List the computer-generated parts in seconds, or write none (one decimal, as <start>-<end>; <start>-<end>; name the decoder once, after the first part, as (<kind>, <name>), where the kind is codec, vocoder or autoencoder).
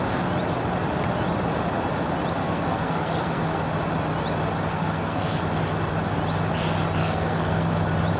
2.4-3.6 (codec, SNAC); 4.7-5.4; 7.0-7.7